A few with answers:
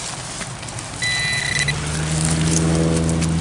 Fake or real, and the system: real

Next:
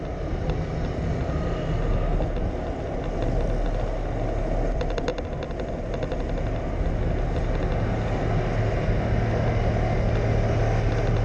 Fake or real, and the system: real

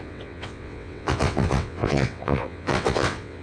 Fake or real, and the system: fake, vocoder, WaveNeXt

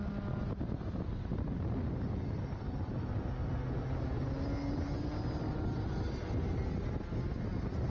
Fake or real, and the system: real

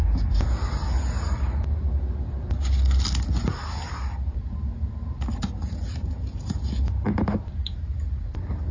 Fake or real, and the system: real